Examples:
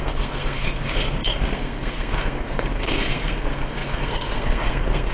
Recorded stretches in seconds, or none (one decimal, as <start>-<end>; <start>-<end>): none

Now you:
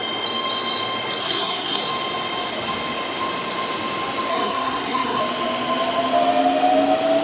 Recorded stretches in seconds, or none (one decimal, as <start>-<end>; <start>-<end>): 0.0-1.2; 1.8-4.3; 5.2-7.2

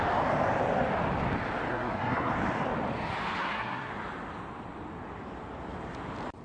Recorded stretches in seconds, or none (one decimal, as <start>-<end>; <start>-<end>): 0.0-1.7; 2.3-3.4; 3.9-6.4

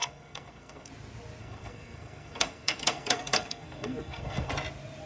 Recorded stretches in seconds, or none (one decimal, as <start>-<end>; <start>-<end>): 0.9-1.4; 4.5-5.1